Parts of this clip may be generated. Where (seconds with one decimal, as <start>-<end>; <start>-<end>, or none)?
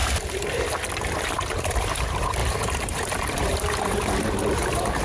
0.9-5.0